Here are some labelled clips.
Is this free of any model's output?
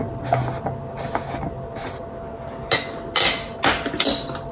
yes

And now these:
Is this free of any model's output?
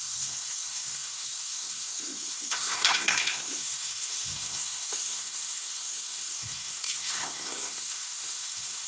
no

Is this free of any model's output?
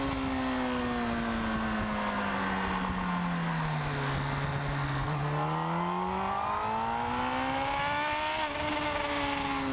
yes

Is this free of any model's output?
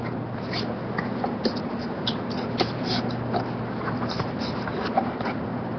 yes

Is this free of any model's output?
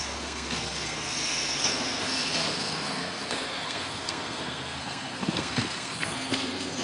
no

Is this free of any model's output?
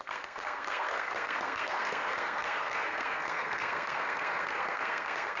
no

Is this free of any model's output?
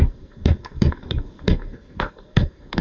no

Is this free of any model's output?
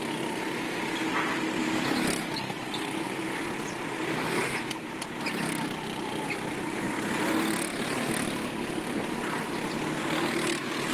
yes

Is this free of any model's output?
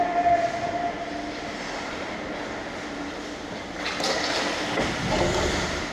yes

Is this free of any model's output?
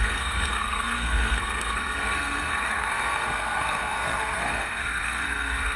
no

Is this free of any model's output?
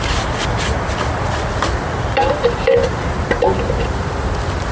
yes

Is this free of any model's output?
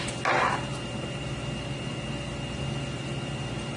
yes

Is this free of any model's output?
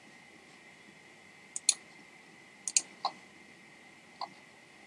yes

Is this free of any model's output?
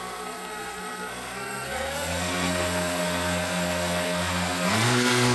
no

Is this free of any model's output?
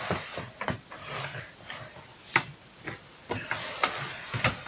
yes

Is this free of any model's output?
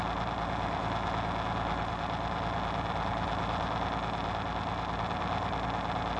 yes